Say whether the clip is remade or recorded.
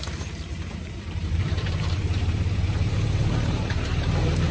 remade